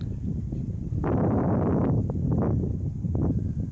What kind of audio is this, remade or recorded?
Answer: recorded